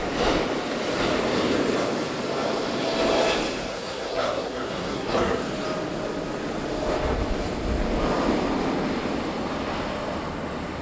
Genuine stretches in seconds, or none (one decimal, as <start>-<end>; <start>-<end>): 0.0-3.7; 5.4-10.8